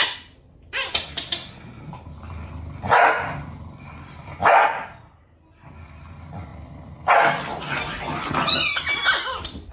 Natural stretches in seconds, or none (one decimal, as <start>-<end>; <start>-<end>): 0.0-9.7